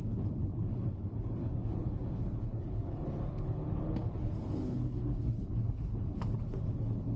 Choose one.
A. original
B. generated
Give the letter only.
B